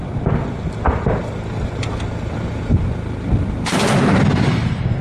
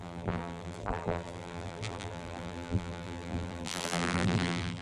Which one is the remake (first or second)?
second